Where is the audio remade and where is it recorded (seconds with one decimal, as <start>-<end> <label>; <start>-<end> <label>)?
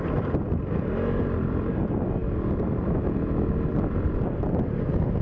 0.0-5.2 recorded